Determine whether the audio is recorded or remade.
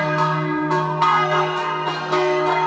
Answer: remade